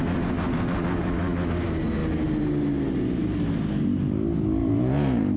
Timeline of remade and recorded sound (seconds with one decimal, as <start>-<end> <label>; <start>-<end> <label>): 0.0-4.6 recorded; 4.6-5.4 remade